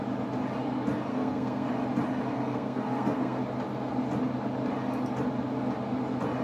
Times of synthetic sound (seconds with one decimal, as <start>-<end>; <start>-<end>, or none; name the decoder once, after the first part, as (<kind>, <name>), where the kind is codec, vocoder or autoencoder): 1.1-1.7 (codec, SNAC); 2.3-3.4